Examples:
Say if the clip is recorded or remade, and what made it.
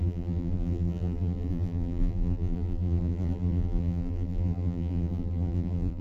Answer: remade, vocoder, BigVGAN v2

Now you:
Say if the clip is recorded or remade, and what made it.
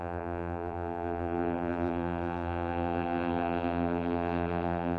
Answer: remade, vocoder, BigVGAN v2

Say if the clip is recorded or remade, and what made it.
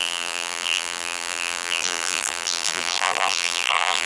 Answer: remade, vocoder, BigVGAN v2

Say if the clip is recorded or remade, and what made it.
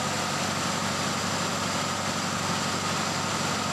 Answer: recorded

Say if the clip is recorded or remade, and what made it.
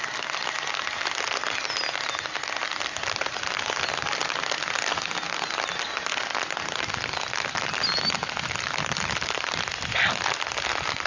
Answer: recorded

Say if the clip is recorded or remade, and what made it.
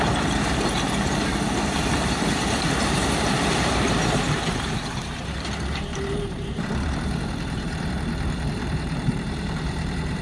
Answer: remade, vocoder, BigVGAN v2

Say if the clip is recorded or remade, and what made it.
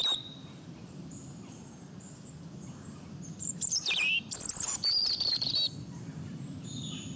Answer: remade, vocoder, BigVGAN v2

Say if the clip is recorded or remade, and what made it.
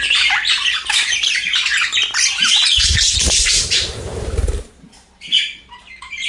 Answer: remade, vocoder, BigVGAN v2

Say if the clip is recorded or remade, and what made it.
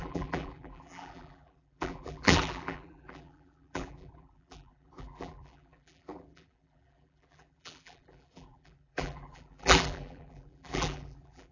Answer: remade, vocoder, BigVGAN v2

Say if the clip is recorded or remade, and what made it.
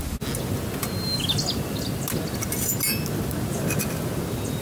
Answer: recorded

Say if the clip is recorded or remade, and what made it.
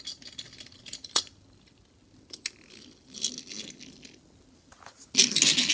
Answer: recorded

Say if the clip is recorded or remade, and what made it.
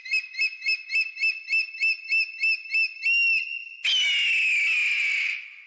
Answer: recorded